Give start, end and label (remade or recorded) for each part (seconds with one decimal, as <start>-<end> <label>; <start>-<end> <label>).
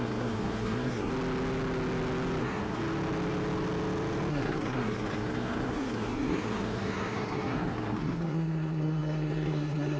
0.0-1.1 remade; 1.1-2.4 recorded; 2.4-2.8 remade; 2.8-4.3 recorded; 4.3-10.0 remade